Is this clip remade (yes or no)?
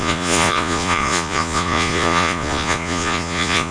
yes